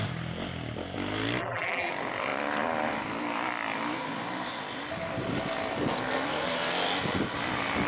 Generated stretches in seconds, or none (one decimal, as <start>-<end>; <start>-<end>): 1.4-1.9